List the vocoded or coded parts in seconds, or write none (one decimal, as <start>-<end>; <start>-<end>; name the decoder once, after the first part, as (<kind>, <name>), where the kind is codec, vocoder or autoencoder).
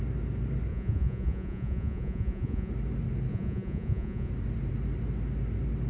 0.7-2.7 (vocoder, Vocos); 3.3-4.3